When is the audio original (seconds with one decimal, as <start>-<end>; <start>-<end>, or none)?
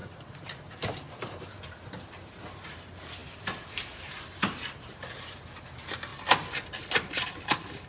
6.1-6.9